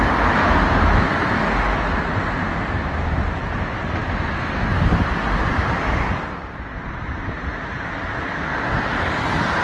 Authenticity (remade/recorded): recorded